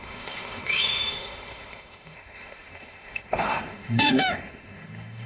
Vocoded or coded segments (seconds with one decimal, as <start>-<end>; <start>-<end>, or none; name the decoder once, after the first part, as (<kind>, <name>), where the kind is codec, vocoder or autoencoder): 0.0-5.3 (autoencoder, DAC-VAE)